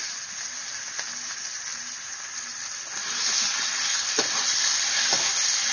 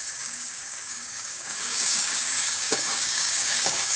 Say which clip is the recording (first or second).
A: first